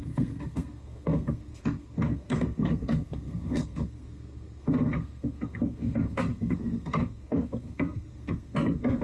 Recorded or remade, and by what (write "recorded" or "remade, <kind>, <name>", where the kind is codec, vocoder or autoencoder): remade, codec, SNAC